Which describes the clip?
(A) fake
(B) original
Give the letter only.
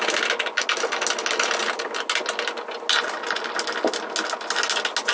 B